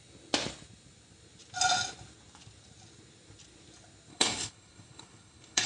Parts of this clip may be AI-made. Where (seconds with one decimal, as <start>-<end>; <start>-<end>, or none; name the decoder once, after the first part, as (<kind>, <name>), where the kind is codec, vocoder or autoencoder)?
4.1-5.7 (codec, HILCodec)